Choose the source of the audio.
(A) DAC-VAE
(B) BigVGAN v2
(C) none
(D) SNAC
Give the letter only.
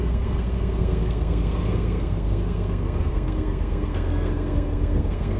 D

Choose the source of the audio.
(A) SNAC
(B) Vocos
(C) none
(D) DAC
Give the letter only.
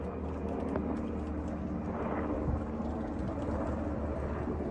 C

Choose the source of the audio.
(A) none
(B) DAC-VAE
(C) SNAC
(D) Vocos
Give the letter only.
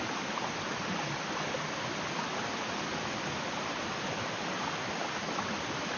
A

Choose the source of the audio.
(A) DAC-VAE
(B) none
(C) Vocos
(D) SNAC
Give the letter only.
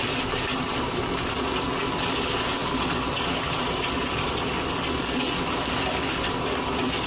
B